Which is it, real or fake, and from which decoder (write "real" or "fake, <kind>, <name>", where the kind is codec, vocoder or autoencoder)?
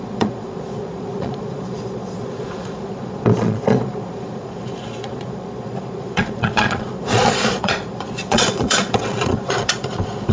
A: fake, vocoder, Vocos